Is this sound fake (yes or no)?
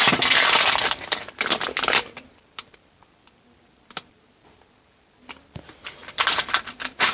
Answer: no